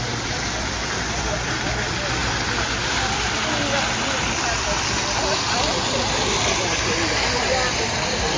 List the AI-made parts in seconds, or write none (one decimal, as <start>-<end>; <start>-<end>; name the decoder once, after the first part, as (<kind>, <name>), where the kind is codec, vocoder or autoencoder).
0.0-2.2 (vocoder, BigVGAN v2); 2.8-8.4

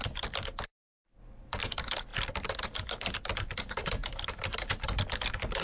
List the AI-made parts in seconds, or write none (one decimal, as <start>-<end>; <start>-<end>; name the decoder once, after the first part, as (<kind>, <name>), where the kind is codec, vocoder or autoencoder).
0.0-2.1 (vocoder, BigVGAN v2); 5.1-5.6

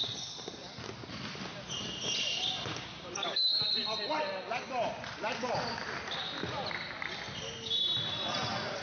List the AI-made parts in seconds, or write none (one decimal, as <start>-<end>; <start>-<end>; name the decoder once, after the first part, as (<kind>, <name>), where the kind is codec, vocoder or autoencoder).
2.7-3.6 (codec, DAC)

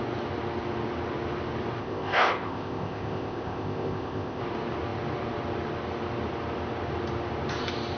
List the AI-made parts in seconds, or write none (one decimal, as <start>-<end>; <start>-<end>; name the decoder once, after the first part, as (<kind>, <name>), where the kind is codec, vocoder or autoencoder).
1.8-4.4 (codec, ZipCodec)

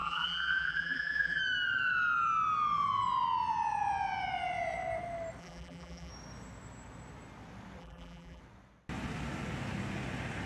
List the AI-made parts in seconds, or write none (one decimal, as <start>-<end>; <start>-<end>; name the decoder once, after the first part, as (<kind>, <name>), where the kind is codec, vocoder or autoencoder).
0.0-1.4 (vocoder, BigVGAN v2); 5.4-6.1; 7.8-8.4

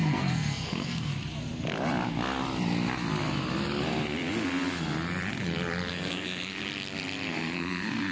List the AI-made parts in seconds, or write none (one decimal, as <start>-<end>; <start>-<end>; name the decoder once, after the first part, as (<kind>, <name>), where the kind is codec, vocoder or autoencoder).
0.0-1.1 (codec, SNAC); 5.9-6.6; 7.3-8.1